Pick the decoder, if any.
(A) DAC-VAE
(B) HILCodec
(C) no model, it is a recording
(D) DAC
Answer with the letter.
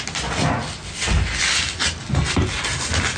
C